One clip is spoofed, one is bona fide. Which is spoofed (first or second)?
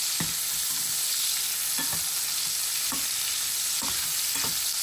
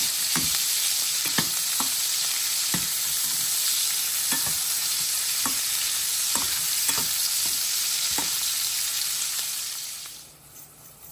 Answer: second